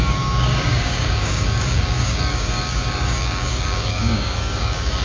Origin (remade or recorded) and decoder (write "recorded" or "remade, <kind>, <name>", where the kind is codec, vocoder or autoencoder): remade, codec, DAC